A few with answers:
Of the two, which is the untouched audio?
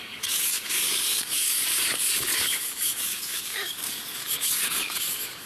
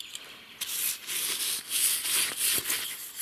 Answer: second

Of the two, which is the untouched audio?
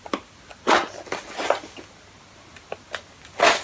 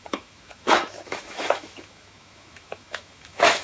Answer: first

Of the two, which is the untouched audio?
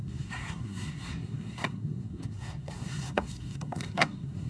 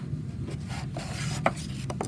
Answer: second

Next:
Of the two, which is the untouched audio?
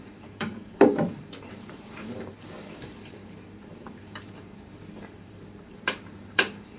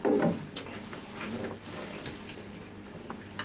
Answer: second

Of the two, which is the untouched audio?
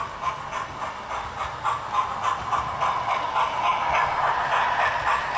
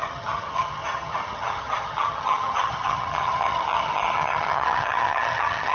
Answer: first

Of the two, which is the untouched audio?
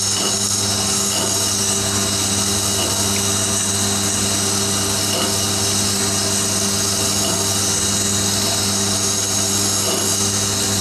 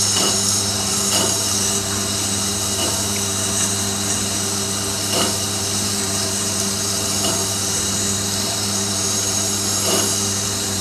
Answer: first